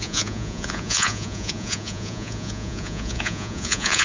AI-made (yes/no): yes